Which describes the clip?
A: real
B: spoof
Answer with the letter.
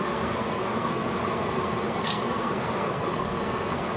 B